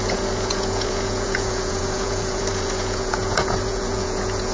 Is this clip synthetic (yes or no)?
yes